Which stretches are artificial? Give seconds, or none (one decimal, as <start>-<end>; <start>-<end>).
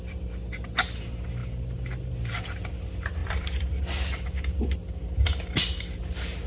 3.2-3.8